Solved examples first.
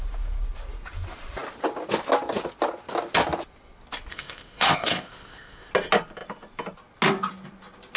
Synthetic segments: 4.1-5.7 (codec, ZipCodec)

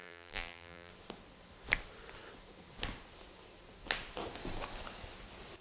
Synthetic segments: 0.0-0.9 (vocoder, BigVGAN v2)

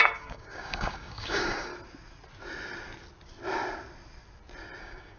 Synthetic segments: 0.0-1.7 (codec, DAC); 4.8-5.2

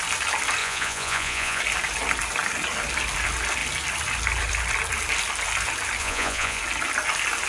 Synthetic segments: 0.6-1.6 (vocoder, Vocos); 6.0-6.6